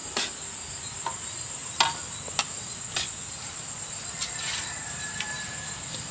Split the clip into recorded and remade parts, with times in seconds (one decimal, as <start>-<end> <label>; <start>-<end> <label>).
0.0-6.1 recorded